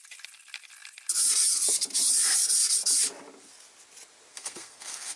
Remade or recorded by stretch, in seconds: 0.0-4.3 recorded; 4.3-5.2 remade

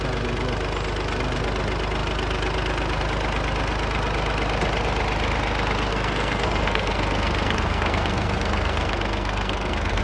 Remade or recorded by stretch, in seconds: 0.0-5.9 recorded; 5.9-10.0 remade

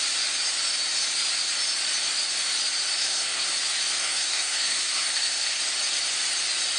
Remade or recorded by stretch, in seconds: 0.0-3.0 recorded; 3.0-3.5 remade; 3.5-4.0 recorded; 4.0-5.6 remade; 5.6-6.8 recorded

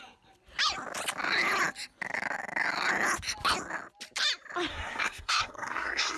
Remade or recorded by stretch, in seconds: 0.0-4.7 recorded; 4.7-6.2 remade

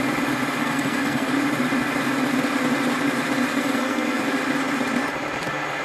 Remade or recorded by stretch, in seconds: 0.0-0.6 recorded; 0.6-1.3 remade; 1.3-3.5 recorded; 3.5-4.2 remade; 4.2-5.8 recorded